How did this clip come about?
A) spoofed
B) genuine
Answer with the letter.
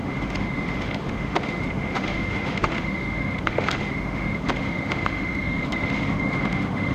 A